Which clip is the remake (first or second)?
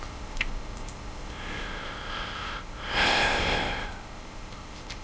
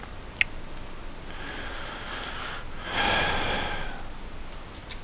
first